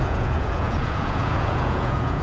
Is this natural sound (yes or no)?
no